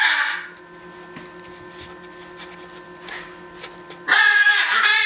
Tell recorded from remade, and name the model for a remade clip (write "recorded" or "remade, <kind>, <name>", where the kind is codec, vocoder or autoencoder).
recorded